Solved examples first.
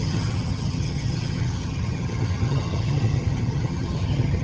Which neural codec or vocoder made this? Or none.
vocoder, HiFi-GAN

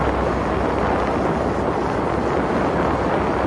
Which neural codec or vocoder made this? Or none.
none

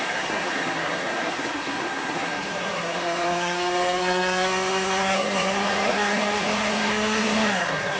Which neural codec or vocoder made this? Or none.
codec, SNAC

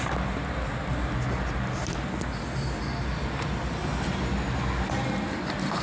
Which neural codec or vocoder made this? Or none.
none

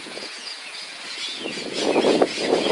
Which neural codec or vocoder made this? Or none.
vocoder, Vocos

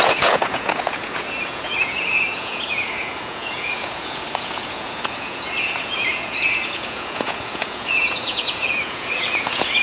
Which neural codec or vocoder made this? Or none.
vocoder, Vocos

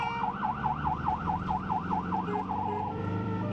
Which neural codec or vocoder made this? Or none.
vocoder, BigVGAN v2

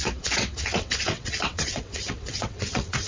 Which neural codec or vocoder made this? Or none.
vocoder, WaveNeXt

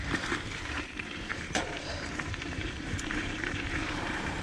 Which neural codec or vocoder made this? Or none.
vocoder, BigVGAN v2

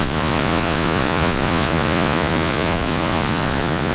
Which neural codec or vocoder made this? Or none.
vocoder, Vocos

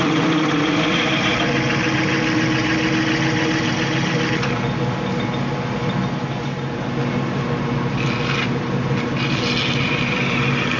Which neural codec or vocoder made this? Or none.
none